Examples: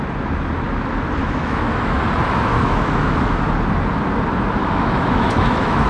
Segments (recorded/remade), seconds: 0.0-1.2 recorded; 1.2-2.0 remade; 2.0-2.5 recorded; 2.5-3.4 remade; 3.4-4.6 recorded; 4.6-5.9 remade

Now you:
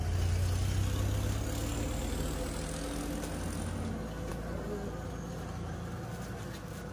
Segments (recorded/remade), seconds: 0.0-6.9 recorded

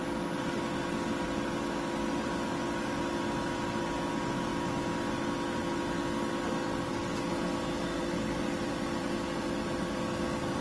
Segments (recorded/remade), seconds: 0.0-10.6 recorded

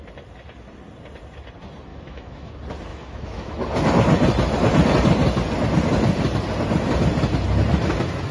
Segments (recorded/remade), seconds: 0.0-1.9 recorded; 1.9-2.5 remade; 2.5-2.9 recorded; 2.9-3.5 remade; 3.5-8.3 recorded

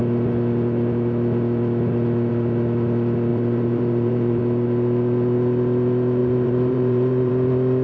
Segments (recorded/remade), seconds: 0.0-3.3 recorded; 3.3-4.4 remade; 4.4-6.2 recorded; 6.2-7.3 remade; 7.3-7.8 recorded

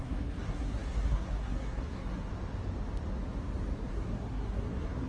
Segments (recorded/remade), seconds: 0.0-2.3 remade; 2.3-3.9 recorded; 3.9-5.1 remade

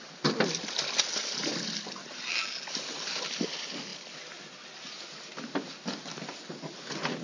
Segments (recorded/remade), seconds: 0.0-7.2 recorded